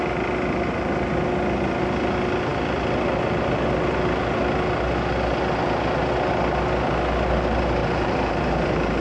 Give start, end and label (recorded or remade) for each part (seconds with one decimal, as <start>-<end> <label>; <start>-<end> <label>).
0.0-7.8 recorded; 7.8-9.0 remade